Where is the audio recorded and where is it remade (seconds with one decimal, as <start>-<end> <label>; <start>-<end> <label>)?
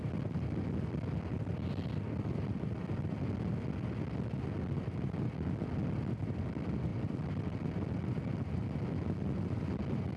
0.0-10.2 recorded